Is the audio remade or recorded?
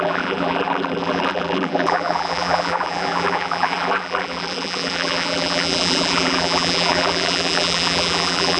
remade